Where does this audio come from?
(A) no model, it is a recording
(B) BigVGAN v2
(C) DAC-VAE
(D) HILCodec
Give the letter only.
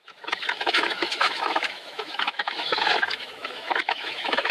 C